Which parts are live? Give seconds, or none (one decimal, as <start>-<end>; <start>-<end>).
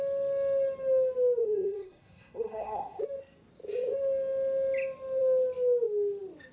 0.0-1.4; 3.0-6.5